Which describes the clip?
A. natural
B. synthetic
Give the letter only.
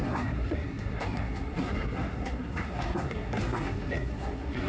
B